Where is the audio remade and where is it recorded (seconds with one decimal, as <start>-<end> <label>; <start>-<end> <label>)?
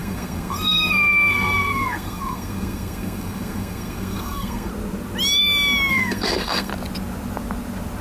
0.0-4.7 remade; 4.7-5.9 recorded; 5.9-6.7 remade; 6.7-8.0 recorded